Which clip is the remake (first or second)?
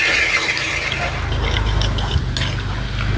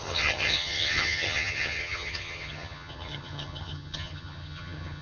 second